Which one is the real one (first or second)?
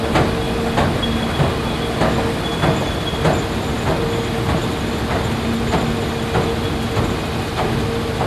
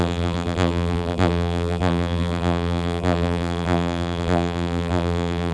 first